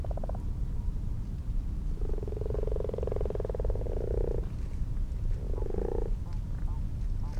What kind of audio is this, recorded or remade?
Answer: recorded